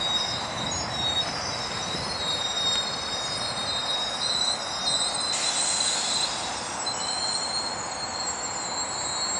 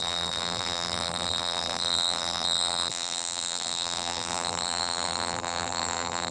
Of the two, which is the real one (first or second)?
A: first